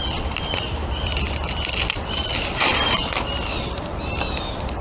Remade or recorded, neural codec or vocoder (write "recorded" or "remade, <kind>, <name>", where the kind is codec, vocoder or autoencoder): remade, vocoder, BigVGAN v2